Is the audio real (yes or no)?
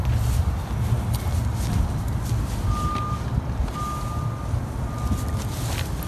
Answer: yes